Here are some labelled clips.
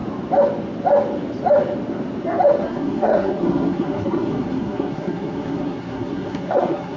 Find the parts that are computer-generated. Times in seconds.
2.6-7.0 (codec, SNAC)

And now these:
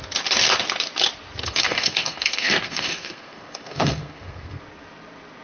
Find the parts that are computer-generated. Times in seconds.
1.4-4.6 (codec, SNAC)

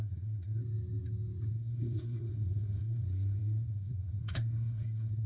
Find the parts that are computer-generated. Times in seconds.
0.0-0.6 (codec, SNAC); 1.5-5.3

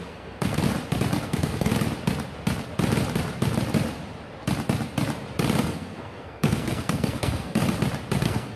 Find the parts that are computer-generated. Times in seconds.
0.0-0.6 (codec, SNAC); 1.2-1.7; 5.6-7.6; 8.2-8.6

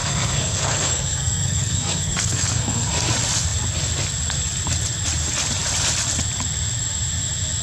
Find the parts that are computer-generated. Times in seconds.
0.0-2.9 (codec, SNAC)